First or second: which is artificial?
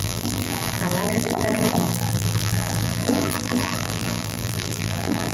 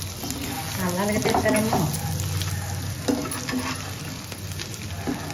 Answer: first